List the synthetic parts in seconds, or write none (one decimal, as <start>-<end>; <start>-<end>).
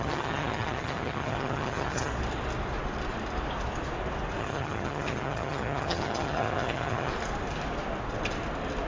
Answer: 0.0-2.1; 4.4-7.1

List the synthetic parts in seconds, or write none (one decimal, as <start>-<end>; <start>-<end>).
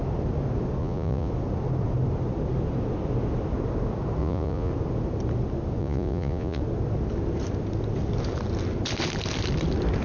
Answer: 0.8-1.3; 4.2-4.7; 5.8-6.6